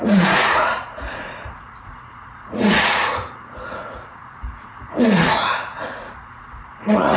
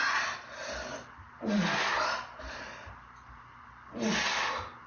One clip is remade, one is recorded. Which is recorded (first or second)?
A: second